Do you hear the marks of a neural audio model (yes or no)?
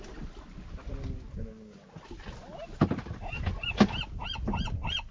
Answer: no